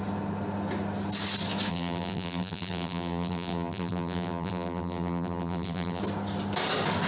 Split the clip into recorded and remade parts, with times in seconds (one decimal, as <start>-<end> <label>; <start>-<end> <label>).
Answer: 0.0-1.7 recorded; 1.7-6.0 remade; 6.0-7.1 recorded